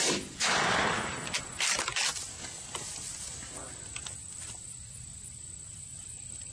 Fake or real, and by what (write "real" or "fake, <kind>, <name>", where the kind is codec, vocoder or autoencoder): real